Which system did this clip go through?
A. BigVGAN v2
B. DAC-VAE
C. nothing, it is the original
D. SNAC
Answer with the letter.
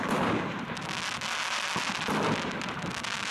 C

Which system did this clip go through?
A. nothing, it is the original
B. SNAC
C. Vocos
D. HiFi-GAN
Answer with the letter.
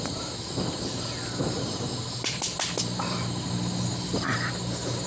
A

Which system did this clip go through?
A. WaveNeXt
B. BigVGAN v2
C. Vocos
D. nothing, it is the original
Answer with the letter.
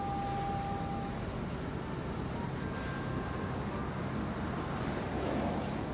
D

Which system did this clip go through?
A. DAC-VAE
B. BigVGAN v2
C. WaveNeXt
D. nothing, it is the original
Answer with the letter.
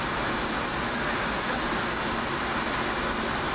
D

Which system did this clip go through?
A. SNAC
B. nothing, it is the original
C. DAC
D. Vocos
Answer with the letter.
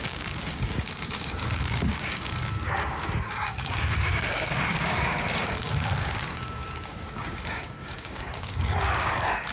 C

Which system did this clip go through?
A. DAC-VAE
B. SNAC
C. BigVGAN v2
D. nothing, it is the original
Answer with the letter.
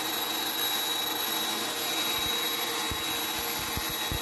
D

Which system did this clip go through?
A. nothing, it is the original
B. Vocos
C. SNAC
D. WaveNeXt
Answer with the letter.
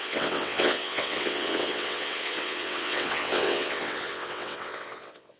D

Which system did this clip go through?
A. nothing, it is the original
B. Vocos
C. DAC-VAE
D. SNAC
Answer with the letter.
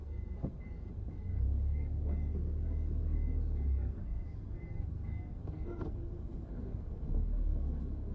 D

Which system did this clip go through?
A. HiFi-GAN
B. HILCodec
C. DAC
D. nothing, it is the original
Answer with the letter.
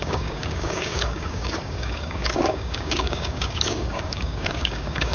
C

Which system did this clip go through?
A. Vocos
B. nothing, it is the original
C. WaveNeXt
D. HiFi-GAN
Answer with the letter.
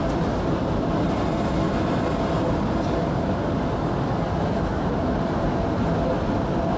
B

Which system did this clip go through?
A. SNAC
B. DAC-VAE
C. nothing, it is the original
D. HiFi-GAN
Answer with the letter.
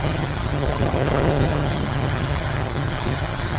D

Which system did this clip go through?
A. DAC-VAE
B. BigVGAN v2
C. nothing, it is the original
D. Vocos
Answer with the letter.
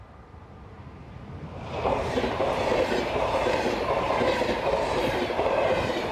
B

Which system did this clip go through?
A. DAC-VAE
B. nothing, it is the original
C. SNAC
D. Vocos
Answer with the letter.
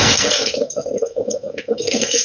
C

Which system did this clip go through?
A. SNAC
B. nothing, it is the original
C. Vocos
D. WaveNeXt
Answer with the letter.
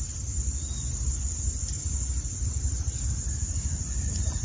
B